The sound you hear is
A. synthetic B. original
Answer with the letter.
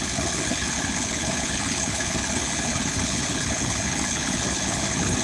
A